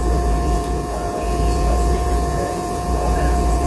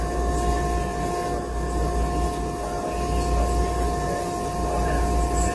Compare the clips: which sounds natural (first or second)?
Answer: second